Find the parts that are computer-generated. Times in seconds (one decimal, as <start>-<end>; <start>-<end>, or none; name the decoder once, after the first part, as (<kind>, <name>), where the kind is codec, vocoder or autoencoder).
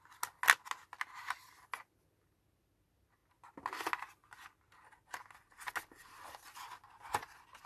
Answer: none